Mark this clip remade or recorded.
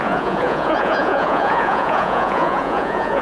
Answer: remade